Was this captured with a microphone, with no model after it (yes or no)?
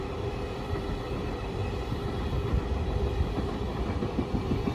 yes